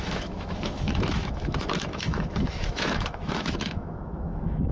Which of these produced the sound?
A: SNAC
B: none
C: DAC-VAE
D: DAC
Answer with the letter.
C